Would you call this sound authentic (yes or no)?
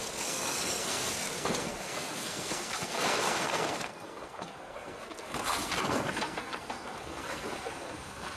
no